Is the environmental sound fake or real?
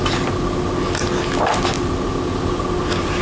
real